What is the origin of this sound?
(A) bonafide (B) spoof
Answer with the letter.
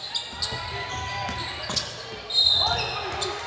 A